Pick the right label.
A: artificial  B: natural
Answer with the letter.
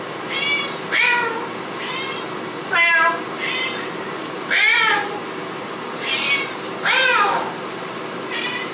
A